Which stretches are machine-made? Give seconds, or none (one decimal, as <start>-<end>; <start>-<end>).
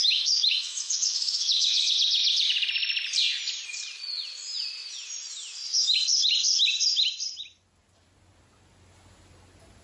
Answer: 0.0-1.9